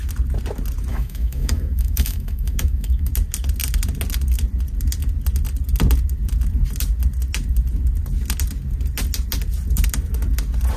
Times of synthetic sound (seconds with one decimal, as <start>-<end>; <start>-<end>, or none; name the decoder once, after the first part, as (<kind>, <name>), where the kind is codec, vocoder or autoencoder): 0.9-3.1 (autoencoder, DAC-VAE)